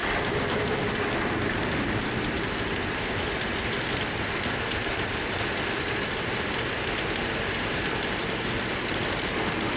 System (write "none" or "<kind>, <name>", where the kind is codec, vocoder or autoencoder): vocoder, BigVGAN v2